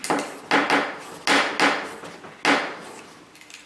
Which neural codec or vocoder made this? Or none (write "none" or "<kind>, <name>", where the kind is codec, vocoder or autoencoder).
none